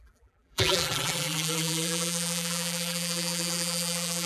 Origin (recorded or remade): remade